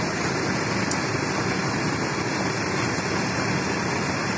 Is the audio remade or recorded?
recorded